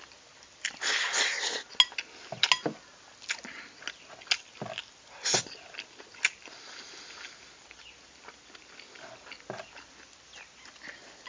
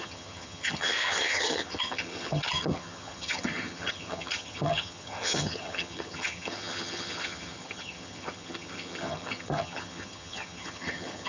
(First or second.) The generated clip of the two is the second